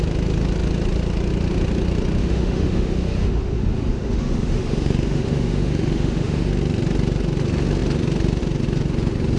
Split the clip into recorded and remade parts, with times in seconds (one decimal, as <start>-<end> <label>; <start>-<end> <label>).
0.0-2.2 recorded; 2.2-6.5 remade; 6.5-9.4 recorded